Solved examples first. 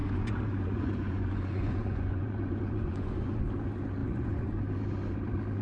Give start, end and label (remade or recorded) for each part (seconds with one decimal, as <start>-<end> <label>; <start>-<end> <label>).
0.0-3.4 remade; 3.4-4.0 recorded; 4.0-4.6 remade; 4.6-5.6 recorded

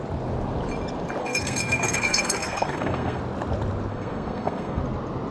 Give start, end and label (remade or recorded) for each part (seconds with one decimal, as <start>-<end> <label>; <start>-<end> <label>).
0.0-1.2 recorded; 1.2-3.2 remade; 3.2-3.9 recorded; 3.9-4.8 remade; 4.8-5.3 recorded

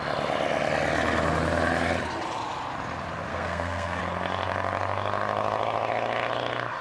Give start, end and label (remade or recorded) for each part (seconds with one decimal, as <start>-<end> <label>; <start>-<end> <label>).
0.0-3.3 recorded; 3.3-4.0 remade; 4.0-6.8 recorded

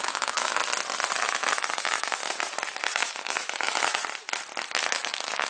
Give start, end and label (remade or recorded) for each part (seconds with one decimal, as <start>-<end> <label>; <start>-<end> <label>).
0.0-0.6 remade; 0.6-1.1 recorded; 1.1-2.2 remade; 2.2-2.8 recorded; 2.8-4.0 remade; 4.0-4.9 recorded; 4.9-5.5 remade

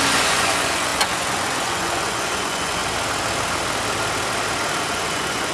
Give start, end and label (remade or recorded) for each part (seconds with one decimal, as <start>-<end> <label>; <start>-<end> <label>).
0.0-2.8 remade; 2.8-4.8 recorded; 4.8-5.5 remade

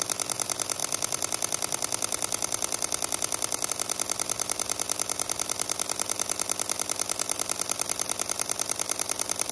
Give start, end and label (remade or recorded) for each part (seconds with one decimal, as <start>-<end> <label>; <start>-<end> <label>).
0.0-9.5 recorded

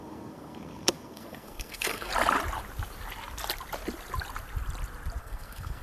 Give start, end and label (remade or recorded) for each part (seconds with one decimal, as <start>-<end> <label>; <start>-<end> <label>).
0.0-2.1 remade; 2.1-5.2 recorded; 5.2-5.8 remade

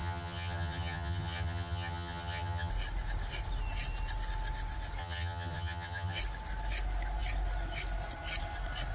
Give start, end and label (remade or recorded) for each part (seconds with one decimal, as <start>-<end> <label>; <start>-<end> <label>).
0.0-2.7 remade; 2.7-5.0 recorded; 5.0-6.2 remade; 6.2-8.9 recorded